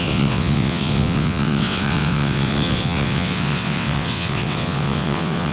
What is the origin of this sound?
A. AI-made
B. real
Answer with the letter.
A